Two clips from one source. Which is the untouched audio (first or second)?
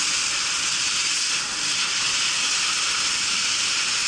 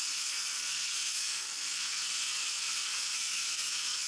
first